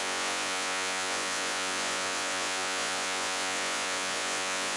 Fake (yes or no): yes